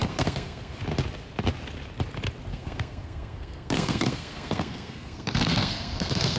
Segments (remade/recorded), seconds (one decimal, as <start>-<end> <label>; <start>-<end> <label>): 0.0-0.8 remade; 0.8-2.5 recorded; 2.5-6.4 remade